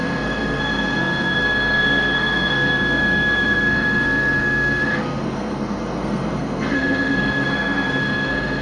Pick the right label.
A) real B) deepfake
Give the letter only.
B